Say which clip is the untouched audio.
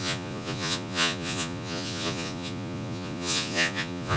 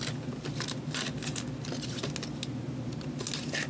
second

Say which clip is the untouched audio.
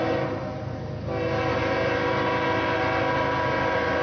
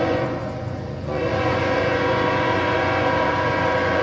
first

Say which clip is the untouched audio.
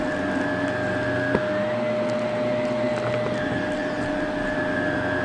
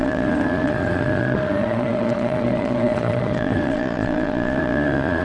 first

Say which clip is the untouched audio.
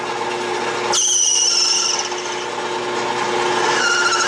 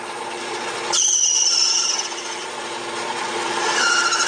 first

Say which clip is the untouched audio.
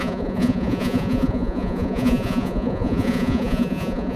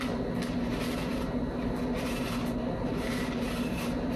second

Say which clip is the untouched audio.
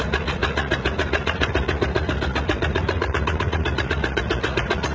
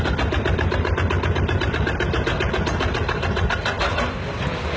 second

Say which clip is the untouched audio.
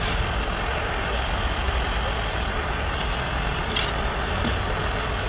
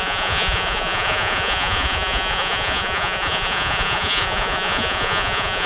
first